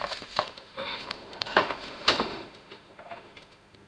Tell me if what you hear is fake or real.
fake